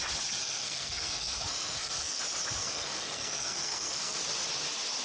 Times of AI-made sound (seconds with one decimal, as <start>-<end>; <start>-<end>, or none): 0.4-2.2; 2.6-4.2